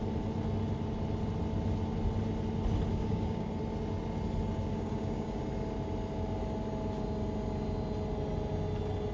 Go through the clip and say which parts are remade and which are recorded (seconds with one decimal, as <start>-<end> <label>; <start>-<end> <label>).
0.0-2.9 recorded; 2.9-3.5 remade; 3.5-4.7 recorded; 4.7-5.4 remade; 5.4-9.1 recorded